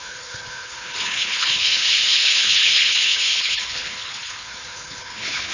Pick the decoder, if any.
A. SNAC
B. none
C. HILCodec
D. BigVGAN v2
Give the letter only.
C